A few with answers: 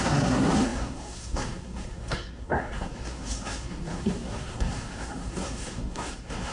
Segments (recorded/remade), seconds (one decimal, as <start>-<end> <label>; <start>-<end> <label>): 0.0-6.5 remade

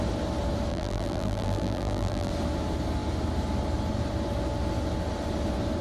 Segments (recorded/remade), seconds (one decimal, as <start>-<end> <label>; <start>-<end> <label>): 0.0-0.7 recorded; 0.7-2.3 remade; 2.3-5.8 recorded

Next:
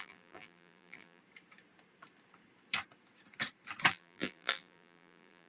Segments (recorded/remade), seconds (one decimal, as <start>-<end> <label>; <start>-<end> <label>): 0.0-1.2 remade; 1.2-3.9 recorded; 3.9-5.5 remade